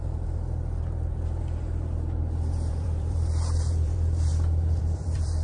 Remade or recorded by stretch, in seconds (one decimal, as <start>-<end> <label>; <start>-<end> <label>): 0.0-2.5 recorded; 2.5-5.4 remade